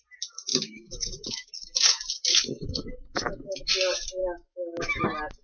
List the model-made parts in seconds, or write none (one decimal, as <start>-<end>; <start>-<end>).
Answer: 0.5-1.5; 2.3-3.7; 4.2-5.0